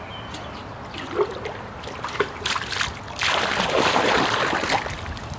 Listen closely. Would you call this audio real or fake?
real